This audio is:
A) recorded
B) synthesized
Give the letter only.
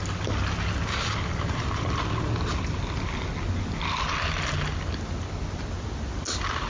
A